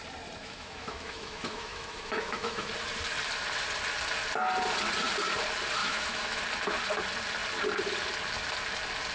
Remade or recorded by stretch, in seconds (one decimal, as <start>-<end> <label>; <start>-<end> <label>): 0.0-0.4 recorded; 0.4-2.7 remade; 2.7-5.8 recorded; 5.8-6.4 remade; 6.4-9.1 recorded